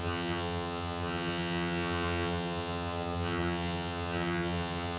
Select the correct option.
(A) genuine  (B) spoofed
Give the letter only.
B